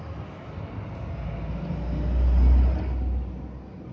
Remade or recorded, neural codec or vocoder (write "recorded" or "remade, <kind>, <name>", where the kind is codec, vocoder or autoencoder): recorded